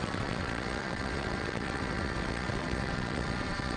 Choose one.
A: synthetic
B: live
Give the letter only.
A